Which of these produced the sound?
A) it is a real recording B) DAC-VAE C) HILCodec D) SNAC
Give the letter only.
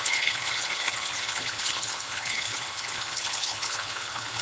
C